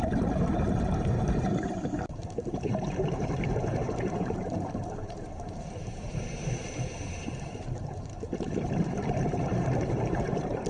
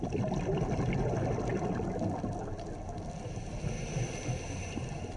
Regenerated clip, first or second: first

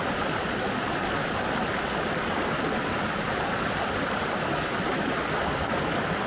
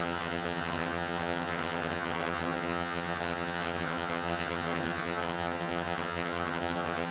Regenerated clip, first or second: second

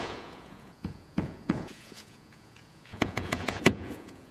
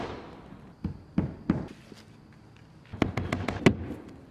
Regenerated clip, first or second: first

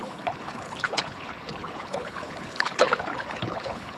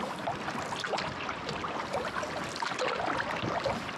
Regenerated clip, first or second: first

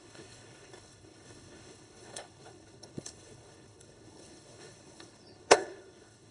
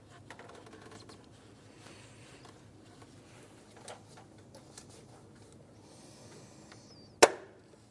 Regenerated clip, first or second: first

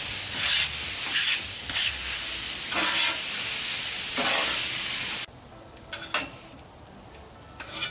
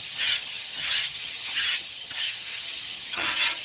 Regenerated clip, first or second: second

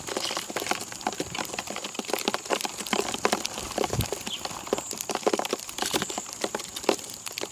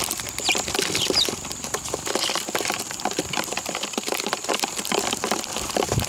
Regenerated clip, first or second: second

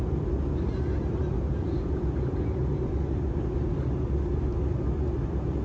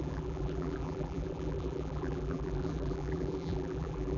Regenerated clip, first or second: second